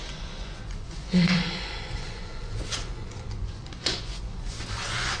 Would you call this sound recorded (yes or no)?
no